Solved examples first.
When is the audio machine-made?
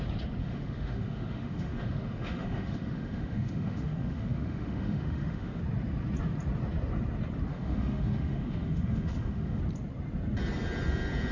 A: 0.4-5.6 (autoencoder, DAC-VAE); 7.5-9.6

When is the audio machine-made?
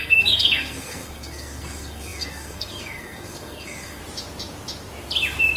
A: 0.0-4.0 (codec, SNAC)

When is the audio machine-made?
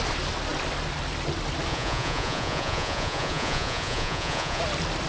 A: 1.7-4.6 (vocoder, Vocos)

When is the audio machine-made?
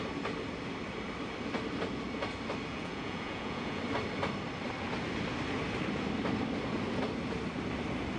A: 2.7-3.8 (vocoder, Vocos)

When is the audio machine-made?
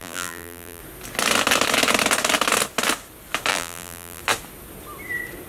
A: 0.0-0.8 (vocoder, BigVGAN v2); 3.5-4.2